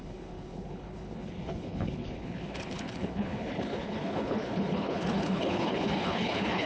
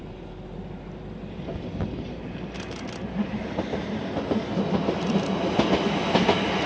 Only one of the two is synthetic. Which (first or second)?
first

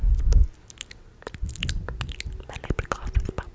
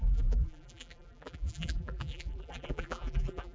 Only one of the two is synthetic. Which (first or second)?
second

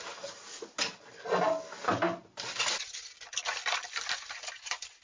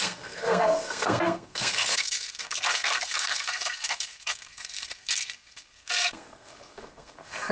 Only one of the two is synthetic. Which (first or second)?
second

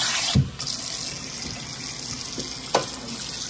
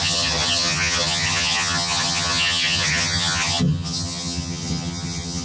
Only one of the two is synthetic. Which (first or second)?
second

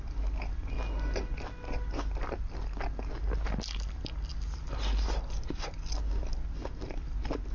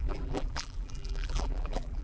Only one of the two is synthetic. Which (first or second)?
second